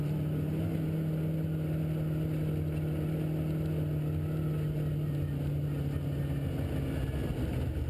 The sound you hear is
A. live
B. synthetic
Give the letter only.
A